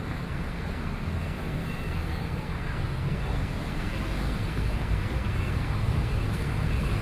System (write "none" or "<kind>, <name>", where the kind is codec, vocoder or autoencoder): codec, SNAC